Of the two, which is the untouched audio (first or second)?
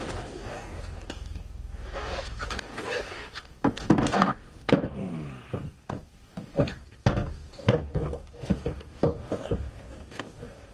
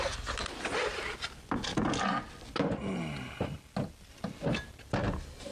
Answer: second